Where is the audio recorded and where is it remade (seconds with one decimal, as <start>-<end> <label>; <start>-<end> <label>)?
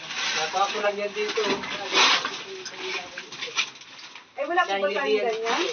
0.0-5.7 recorded